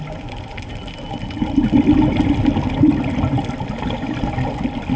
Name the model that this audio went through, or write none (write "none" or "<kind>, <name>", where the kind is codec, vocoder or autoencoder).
none